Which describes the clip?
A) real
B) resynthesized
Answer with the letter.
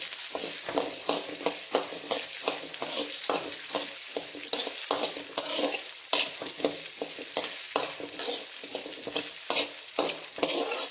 A